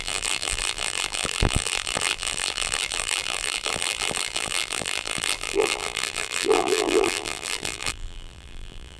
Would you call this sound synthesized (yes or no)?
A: yes